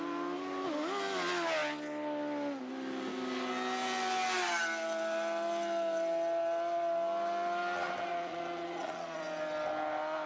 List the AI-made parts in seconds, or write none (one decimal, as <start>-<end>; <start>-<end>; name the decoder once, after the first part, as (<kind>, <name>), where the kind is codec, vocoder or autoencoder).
8.1-9.2 (vocoder, Vocos)